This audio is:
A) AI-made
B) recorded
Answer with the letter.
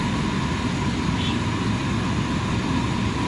B